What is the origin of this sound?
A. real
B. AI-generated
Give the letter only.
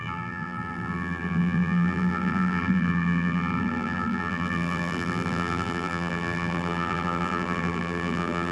B